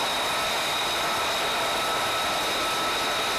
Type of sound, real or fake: real